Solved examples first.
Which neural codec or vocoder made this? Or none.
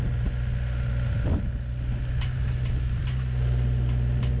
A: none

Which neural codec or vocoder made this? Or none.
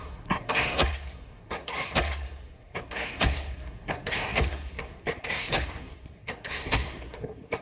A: codec, SNAC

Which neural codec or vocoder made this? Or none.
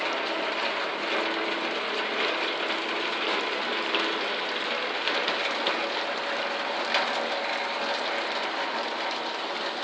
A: none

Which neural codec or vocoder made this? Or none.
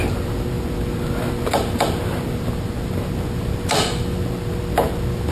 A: none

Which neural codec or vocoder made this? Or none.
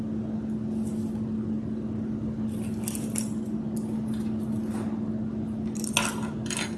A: none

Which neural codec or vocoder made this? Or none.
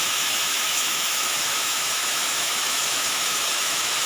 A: autoencoder, DAC-VAE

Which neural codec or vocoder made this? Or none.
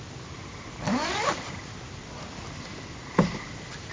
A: none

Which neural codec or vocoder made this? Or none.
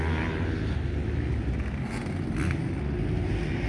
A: none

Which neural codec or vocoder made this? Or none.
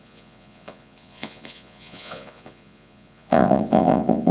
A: vocoder, Vocos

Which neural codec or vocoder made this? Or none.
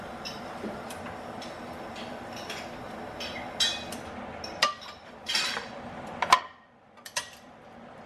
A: none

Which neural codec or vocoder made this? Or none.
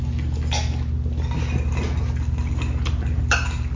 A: none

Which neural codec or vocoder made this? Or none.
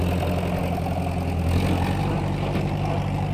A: none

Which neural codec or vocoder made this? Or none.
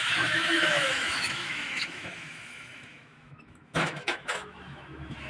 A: autoencoder, DAC-VAE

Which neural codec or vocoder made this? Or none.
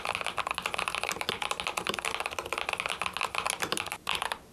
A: none